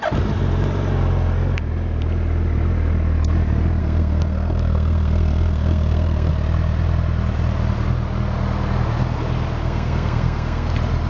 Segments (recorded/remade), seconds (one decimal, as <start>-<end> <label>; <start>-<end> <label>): 0.0-3.8 recorded; 3.8-6.3 remade; 6.3-9.6 recorded; 9.6-10.7 remade; 10.7-11.1 recorded